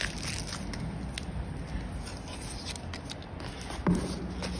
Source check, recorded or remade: recorded